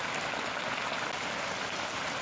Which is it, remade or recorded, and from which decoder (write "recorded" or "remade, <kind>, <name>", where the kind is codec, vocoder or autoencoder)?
recorded